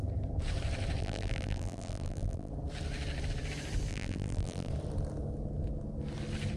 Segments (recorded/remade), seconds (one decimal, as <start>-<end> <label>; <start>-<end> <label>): 0.0-1.0 recorded; 1.0-2.5 remade; 2.5-3.9 recorded; 3.9-4.7 remade; 4.7-6.6 recorded